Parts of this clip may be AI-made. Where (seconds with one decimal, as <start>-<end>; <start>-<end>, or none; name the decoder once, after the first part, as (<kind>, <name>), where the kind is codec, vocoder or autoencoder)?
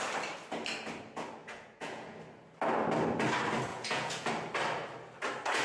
1.4-2.2 (vocoder, Vocos); 3.7-4.3